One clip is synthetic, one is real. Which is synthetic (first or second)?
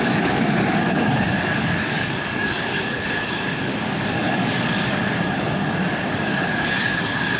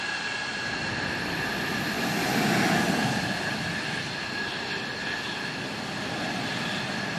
first